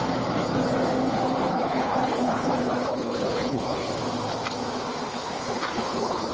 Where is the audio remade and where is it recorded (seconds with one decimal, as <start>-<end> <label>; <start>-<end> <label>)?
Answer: 0.0-1.5 recorded; 1.5-3.9 remade; 3.9-5.1 recorded; 5.1-6.3 remade